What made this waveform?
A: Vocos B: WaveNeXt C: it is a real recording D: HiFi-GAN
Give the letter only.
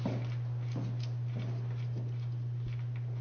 C